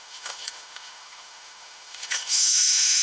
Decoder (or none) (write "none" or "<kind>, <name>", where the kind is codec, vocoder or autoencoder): autoencoder, DAC-VAE